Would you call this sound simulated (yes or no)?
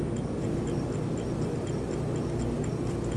no